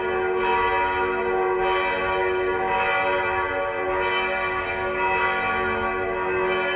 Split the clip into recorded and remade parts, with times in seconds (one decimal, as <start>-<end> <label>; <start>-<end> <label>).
0.0-6.8 recorded